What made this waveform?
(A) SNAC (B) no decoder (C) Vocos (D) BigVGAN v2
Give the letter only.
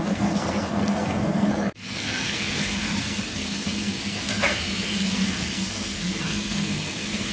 A